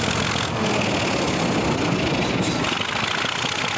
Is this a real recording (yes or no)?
yes